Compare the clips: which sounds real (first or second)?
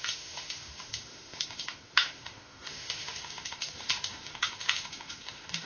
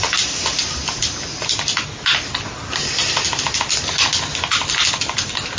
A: second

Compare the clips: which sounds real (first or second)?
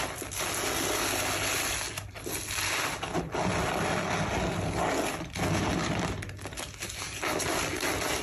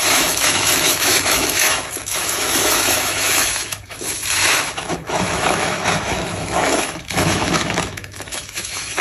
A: first